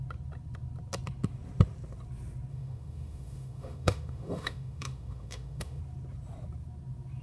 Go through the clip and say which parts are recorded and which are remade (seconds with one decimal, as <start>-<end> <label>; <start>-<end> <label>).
0.0-2.5 recorded; 2.5-5.8 remade; 5.8-7.2 recorded